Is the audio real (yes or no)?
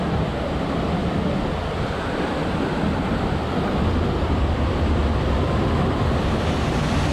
yes